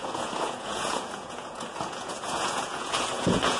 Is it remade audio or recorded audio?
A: remade